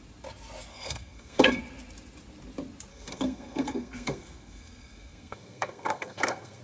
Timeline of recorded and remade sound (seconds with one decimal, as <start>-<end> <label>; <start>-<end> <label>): 0.0-0.7 recorded; 0.7-1.6 remade; 1.6-2.9 recorded; 2.9-6.6 remade